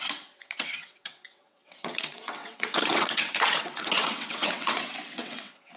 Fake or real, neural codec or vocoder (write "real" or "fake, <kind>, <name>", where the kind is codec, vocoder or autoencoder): fake, vocoder, WaveNeXt